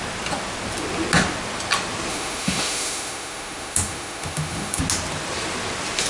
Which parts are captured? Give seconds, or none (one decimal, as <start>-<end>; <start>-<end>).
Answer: 0.0-2.1; 4.8-6.1